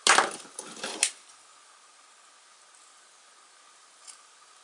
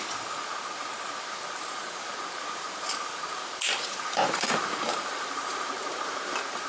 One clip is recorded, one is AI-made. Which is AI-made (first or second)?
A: second